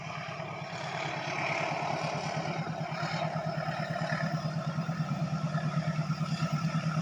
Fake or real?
fake